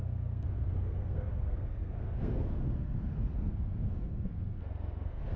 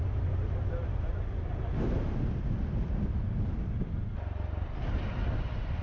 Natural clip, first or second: second